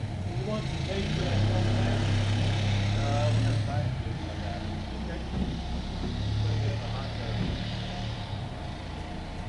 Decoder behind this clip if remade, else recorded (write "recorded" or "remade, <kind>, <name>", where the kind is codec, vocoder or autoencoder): recorded